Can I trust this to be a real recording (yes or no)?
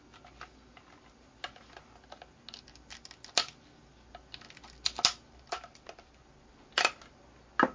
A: yes